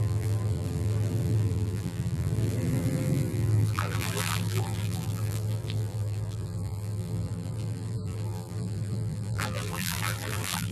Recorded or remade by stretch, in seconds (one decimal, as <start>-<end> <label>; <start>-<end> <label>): 0.0-10.7 remade